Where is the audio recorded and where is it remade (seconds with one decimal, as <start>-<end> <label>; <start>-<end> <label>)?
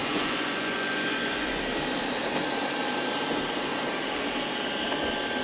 0.0-1.6 remade; 1.6-5.4 recorded